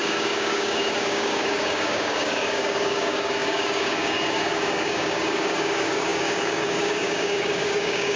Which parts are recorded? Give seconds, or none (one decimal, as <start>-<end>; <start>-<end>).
none